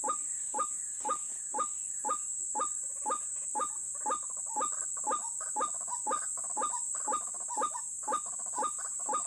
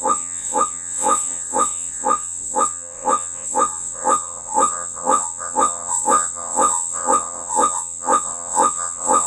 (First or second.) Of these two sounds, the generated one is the second